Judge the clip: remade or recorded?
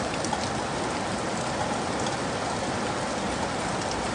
recorded